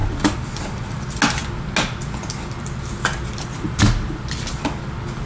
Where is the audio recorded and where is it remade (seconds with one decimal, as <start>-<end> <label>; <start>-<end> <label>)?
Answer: 0.0-5.3 recorded